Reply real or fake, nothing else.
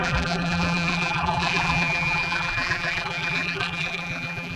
fake